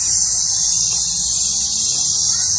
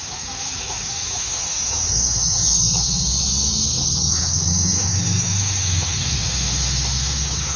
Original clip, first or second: first